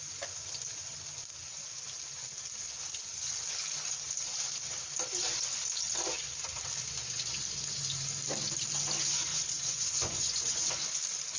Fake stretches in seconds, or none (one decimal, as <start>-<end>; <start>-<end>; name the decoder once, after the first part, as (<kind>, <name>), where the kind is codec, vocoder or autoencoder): 9.3-11.0 (vocoder, Vocos)

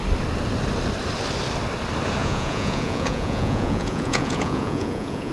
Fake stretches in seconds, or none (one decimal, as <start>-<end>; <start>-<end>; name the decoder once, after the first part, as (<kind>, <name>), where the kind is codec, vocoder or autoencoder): 2.2-5.3 (vocoder, Vocos)

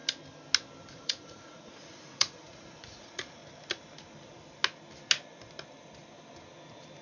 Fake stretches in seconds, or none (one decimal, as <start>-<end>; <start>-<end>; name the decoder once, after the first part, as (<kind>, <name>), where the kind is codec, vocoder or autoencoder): 0.9-3.4 (vocoder, Vocos)

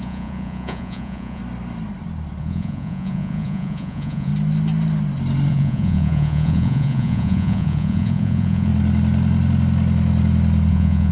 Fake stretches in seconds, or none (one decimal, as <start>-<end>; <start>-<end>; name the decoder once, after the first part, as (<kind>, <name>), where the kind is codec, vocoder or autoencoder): 0.0-1.4 (vocoder, Vocos); 2.4-4.3; 5.5-8.7; 10.7-11.1

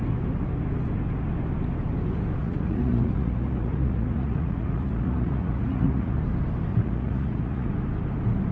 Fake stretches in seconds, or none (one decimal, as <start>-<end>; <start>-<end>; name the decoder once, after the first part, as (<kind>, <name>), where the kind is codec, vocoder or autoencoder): 2.4-6.2 (vocoder, Vocos); 6.7-7.7